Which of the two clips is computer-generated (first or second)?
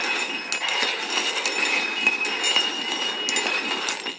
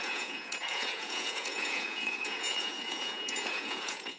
second